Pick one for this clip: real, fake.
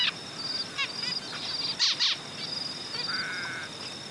real